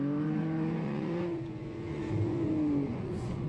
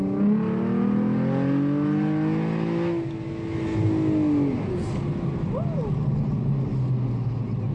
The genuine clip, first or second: second